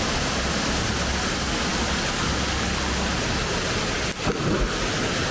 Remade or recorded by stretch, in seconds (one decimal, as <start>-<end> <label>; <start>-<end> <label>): 0.0-5.3 recorded